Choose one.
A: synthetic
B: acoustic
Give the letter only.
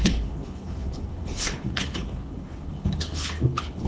A